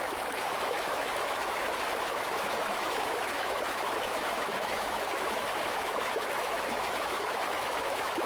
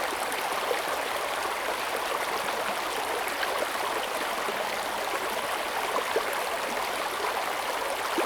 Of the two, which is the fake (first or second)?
first